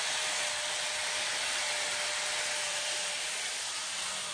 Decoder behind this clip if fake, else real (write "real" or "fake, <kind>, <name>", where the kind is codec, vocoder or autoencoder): real